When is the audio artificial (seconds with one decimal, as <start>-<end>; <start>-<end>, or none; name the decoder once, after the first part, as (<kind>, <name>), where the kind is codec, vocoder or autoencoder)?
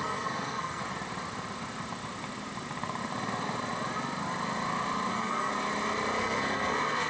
0.0-0.8 (codec, SNAC); 5.1-5.5; 6.2-7.1